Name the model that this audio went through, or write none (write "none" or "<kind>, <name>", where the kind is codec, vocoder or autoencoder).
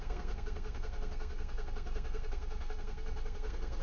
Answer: codec, SNAC